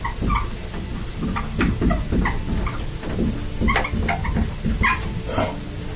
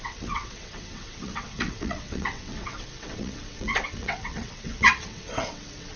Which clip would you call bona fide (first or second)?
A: first